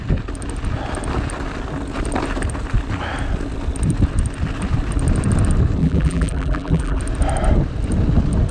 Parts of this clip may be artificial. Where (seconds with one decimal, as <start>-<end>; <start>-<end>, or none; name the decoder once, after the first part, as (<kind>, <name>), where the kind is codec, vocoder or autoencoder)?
5.8-7.0 (vocoder, BigVGAN v2)